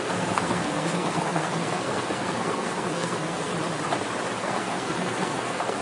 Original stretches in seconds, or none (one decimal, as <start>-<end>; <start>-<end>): 3.5-4.4